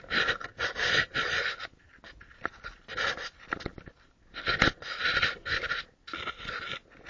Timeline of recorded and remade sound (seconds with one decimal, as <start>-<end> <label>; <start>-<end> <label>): 0.0-0.5 recorded; 0.5-1.4 remade; 1.4-3.7 recorded; 3.7-4.6 remade; 4.6-7.1 recorded